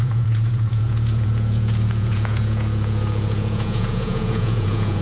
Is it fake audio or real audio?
fake